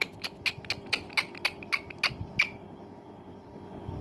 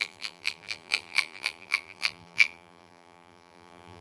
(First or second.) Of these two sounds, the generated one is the second